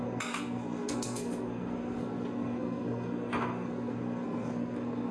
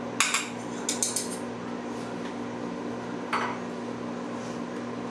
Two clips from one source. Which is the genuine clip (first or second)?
second